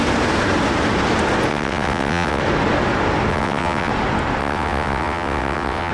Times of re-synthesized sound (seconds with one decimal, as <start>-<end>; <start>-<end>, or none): 1.5-2.4; 3.3-3.9; 4.4-5.9